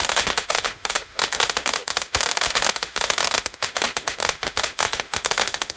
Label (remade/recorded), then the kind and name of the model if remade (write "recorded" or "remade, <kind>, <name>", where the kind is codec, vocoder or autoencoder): remade, autoencoder, DAC-VAE